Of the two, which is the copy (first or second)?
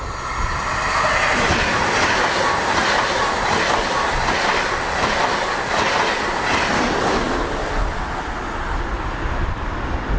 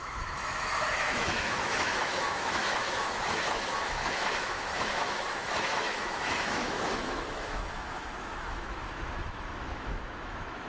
second